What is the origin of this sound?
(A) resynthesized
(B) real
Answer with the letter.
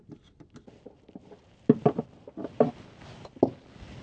B